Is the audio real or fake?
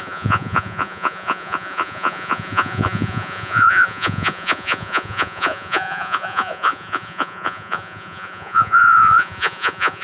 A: fake